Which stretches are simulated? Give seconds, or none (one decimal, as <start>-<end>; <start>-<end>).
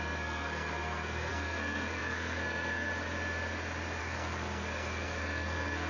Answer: 0.0-2.9; 4.0-5.9